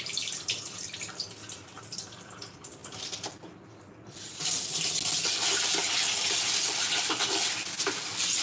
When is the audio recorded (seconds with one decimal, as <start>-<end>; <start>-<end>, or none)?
2.8-7.8